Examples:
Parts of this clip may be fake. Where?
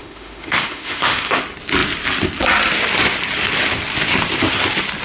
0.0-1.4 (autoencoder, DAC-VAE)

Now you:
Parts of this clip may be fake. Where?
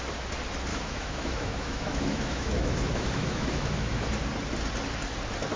0.7-4.1 (autoencoder, DAC-VAE)